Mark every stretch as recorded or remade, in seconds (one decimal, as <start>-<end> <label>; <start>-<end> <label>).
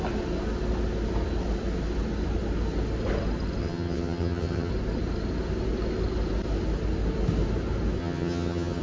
0.0-3.6 recorded; 3.6-4.7 remade; 4.7-8.0 recorded; 8.0-8.8 remade